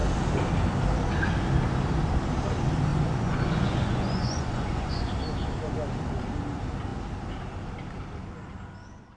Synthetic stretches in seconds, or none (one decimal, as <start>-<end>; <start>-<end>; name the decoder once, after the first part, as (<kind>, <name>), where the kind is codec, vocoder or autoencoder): 2.9-5.1 (vocoder, Vocos)